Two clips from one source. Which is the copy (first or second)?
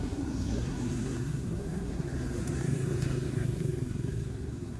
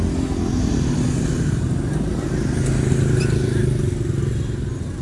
first